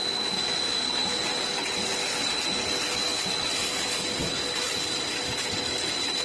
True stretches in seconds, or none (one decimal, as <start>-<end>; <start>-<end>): 0.0-6.2